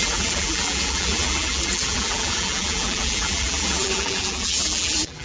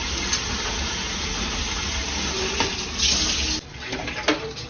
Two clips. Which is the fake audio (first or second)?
first